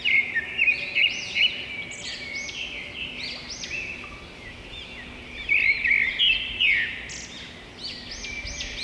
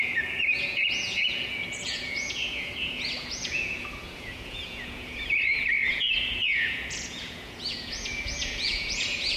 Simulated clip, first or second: second